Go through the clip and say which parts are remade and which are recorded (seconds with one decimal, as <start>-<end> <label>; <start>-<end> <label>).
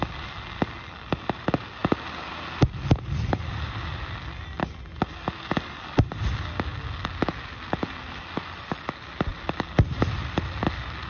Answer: 0.0-11.1 recorded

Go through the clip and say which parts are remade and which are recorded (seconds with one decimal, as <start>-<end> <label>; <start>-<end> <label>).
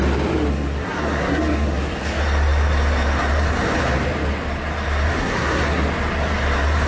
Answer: 0.0-0.5 recorded; 0.5-1.8 remade; 1.8-5.2 recorded; 5.2-5.8 remade; 5.8-6.9 recorded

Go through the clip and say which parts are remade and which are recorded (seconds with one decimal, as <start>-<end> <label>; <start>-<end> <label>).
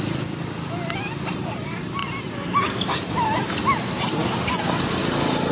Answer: 0.0-5.5 recorded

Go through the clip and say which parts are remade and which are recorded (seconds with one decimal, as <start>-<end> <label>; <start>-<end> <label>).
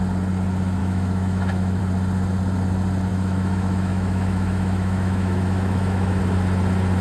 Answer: 0.0-0.8 recorded; 0.8-1.8 remade; 1.8-3.1 recorded; 3.1-6.2 remade; 6.2-7.0 recorded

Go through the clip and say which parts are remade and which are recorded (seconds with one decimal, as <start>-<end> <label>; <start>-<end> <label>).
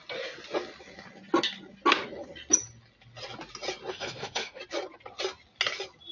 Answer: 0.0-3.9 recorded; 3.9-4.6 remade; 4.6-6.1 recorded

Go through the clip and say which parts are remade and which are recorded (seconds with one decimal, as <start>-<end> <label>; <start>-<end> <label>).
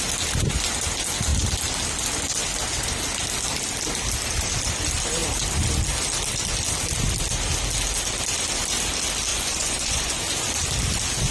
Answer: 0.0-9.3 recorded; 9.3-10.2 remade; 10.2-11.3 recorded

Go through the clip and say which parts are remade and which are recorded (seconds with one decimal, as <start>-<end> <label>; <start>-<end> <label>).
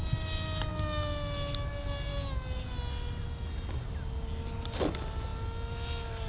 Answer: 0.0-6.3 recorded